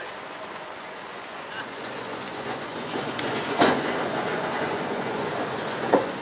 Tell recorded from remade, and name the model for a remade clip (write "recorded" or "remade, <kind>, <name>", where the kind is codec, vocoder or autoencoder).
remade, vocoder, Vocos